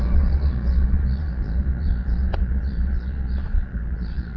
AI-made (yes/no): yes